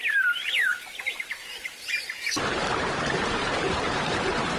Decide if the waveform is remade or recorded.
remade